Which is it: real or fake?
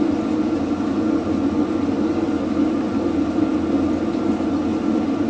real